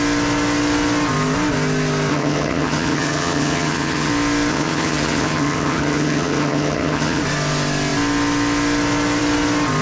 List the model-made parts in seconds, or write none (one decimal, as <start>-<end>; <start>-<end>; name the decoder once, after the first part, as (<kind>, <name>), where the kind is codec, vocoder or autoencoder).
2.1-4.1 (vocoder, HiFi-GAN); 4.5-7.2